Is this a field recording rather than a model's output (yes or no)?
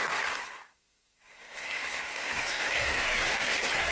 no